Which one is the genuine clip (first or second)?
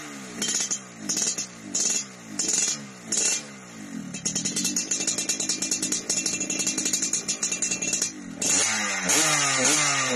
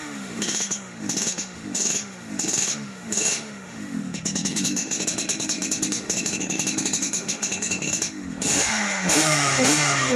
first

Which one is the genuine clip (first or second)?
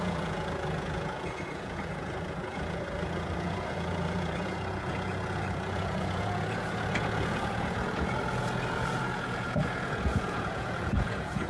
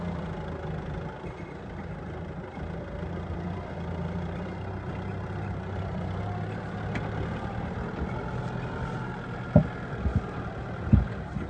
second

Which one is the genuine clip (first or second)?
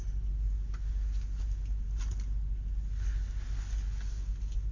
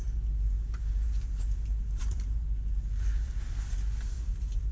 first